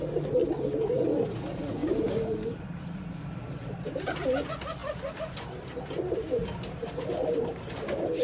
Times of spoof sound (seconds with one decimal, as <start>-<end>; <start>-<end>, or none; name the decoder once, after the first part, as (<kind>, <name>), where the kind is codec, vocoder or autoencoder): 1.8-2.8 (vocoder, BigVGAN v2)